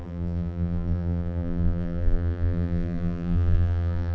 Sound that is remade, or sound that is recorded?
remade